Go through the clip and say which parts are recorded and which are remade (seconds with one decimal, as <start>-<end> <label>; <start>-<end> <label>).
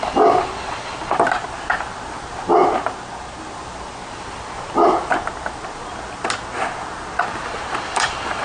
0.0-8.4 recorded